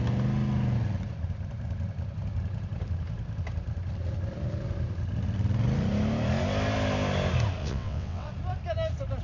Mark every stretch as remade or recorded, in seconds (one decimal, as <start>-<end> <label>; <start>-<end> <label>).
0.0-7.6 recorded; 7.6-8.3 remade; 8.3-9.2 recorded